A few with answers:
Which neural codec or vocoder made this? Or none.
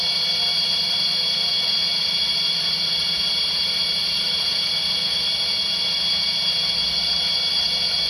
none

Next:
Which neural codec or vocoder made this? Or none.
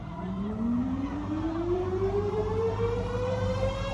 vocoder, BigVGAN v2